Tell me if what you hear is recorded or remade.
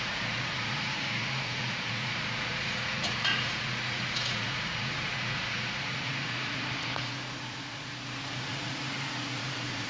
remade